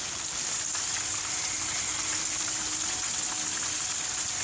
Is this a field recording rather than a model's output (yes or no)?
yes